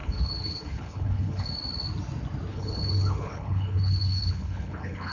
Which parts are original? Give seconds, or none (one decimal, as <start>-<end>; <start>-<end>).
1.5-2.5